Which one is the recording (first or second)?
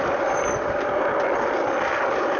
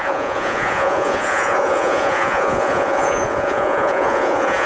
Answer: first